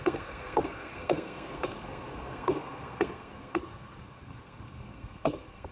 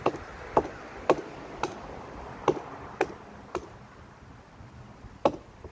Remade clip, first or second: first